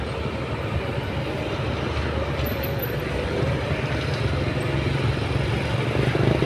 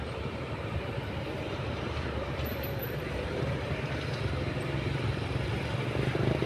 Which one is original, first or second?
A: first